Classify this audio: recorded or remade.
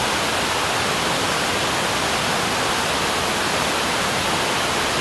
recorded